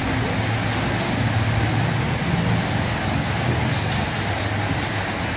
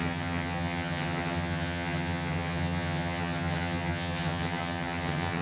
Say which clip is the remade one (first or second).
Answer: second